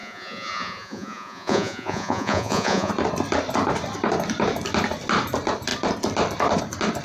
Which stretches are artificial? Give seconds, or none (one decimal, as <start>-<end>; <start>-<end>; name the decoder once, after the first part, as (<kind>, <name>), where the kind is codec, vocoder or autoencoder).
0.0-2.9 (vocoder, Vocos)